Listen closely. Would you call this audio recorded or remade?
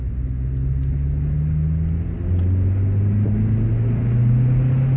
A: recorded